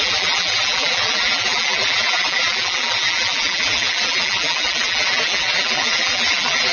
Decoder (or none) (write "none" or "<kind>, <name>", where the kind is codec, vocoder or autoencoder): vocoder, BigVGAN v2